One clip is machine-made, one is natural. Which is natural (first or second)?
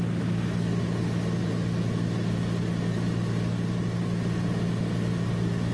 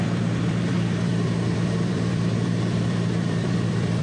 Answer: first